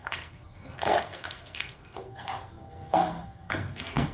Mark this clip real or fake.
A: fake